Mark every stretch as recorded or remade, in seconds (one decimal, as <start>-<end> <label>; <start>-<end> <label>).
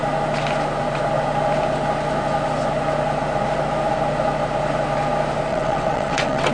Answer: 0.0-5.5 recorded; 5.5-6.5 remade